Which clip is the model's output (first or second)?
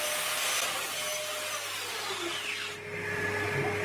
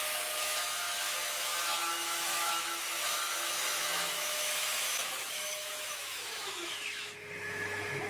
second